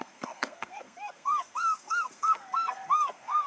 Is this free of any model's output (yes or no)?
no